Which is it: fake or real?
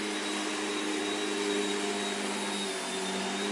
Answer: real